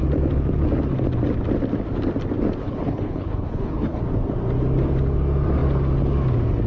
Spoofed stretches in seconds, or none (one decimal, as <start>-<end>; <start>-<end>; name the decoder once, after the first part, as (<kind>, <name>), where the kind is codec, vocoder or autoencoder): 2.6-4.0 (codec, HILCodec)